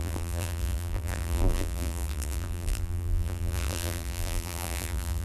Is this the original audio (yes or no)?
no